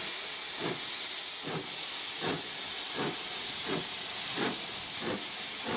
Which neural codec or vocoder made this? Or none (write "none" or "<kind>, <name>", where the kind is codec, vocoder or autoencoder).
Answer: none